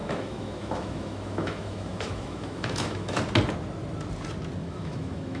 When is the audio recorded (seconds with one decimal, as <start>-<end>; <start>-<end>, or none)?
3.2-4.6